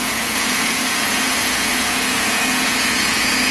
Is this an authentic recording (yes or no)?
no